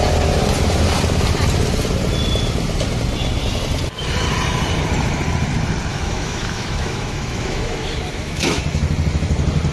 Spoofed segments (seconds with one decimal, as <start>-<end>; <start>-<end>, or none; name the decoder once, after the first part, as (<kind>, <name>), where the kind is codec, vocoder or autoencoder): 5.9-8.6 (autoencoder, DAC-VAE)

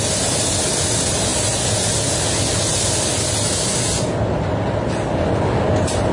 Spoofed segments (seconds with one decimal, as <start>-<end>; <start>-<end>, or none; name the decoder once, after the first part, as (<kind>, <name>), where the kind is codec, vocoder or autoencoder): none